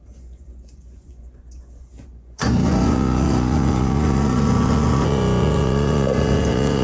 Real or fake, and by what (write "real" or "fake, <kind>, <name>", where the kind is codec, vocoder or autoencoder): fake, vocoder, Vocos